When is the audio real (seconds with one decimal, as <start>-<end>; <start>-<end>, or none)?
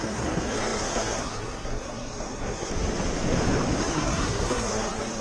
2.7-3.8